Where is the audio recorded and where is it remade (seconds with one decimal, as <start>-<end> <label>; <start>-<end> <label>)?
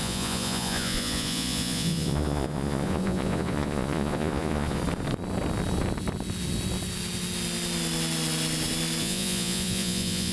0.0-4.8 remade; 4.8-9.0 recorded; 9.0-10.3 remade